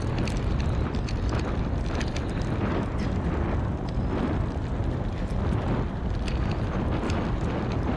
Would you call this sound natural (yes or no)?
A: yes